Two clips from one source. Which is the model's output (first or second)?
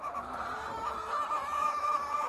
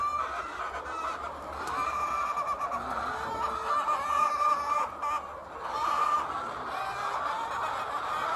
first